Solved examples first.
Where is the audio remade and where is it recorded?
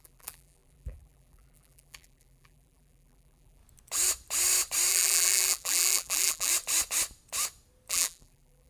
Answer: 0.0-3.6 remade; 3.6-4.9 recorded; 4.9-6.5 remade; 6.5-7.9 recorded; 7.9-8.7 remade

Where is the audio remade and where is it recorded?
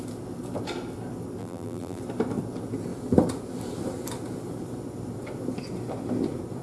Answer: 0.0-1.4 recorded; 1.4-2.0 remade; 2.0-6.6 recorded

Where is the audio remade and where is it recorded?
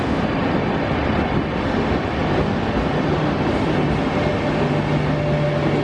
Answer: 0.0-2.2 recorded; 2.2-4.0 remade; 4.0-5.8 recorded